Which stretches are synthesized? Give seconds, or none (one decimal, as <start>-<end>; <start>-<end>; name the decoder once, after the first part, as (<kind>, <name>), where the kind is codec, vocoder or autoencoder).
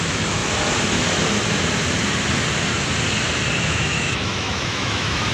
0.0-0.4 (autoencoder, DAC-VAE); 3.6-5.3